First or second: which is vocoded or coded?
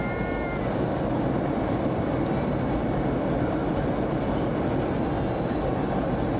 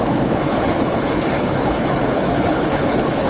second